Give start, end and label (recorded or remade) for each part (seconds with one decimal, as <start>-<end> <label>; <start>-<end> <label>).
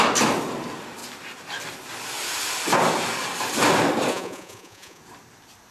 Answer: 0.0-4.1 recorded; 4.1-5.0 remade; 5.0-5.7 recorded